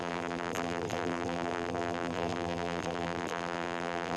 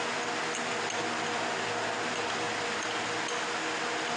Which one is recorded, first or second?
second